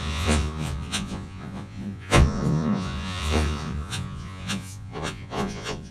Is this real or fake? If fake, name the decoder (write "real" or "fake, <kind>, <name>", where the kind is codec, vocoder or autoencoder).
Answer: fake, vocoder, Vocos